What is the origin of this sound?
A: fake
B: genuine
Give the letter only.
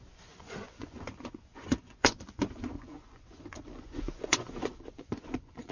A